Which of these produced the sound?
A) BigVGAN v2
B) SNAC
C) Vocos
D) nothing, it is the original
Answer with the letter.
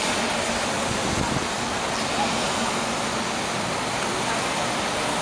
D